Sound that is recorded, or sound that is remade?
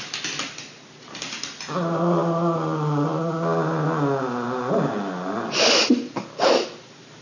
recorded